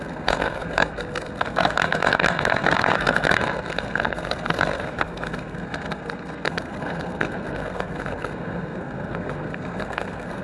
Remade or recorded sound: remade